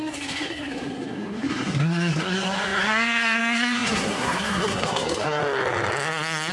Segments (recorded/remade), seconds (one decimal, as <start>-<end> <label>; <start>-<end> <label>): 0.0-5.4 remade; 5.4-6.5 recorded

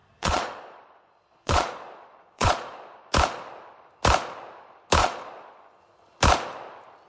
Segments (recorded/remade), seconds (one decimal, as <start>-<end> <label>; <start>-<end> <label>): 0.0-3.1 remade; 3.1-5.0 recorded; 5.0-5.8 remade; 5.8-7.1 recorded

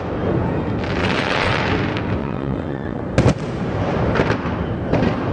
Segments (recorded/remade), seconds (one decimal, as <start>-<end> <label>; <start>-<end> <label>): 0.0-1.0 recorded; 1.0-1.6 remade; 1.6-2.2 recorded; 2.2-3.0 remade; 3.0-5.3 recorded

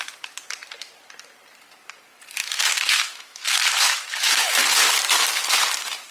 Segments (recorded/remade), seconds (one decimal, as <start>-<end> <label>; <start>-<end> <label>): 0.0-2.4 recorded; 2.4-4.9 remade; 4.9-6.1 recorded

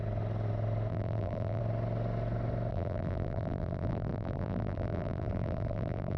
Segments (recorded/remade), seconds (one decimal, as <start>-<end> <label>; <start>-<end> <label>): 0.0-0.9 recorded; 0.9-1.6 remade; 1.6-2.7 recorded; 2.7-6.2 remade

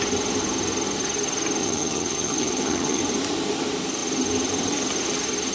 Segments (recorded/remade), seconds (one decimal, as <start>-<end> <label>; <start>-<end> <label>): 0.0-1.6 recorded; 1.6-3.0 remade; 3.0-5.5 recorded

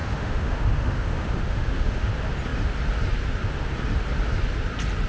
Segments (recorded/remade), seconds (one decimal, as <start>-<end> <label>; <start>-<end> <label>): 0.0-2.1 remade; 2.1-5.1 recorded